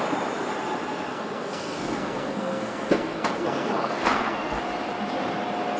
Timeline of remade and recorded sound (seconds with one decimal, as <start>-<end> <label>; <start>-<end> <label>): 0.0-1.1 recorded; 1.1-4.6 remade; 4.6-5.8 recorded